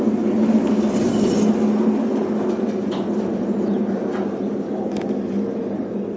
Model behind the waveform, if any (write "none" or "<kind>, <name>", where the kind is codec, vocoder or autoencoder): none